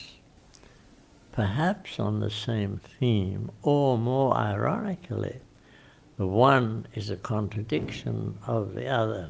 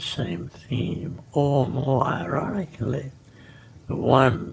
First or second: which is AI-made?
second